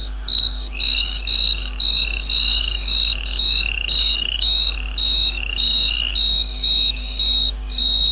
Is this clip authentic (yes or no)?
no